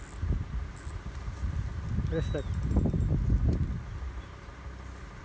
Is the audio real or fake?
real